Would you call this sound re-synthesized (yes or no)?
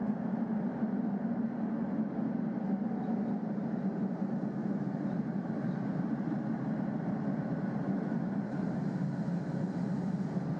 no